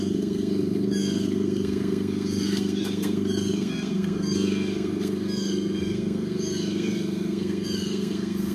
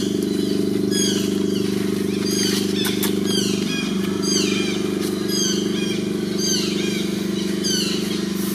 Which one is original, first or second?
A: second